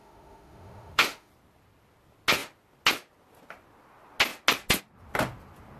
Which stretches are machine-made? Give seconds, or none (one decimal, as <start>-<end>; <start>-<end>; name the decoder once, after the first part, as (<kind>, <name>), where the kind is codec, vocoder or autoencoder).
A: 0.0-1.3 (autoencoder, DAC-VAE)